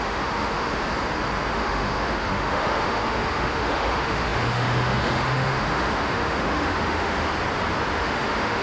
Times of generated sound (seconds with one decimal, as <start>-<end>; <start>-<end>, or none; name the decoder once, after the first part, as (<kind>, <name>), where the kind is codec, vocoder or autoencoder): 0.0-0.9 (autoencoder, DAC-VAE); 1.5-7.3; 7.9-8.6